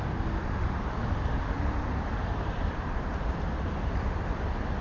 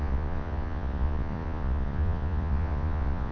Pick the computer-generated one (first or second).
second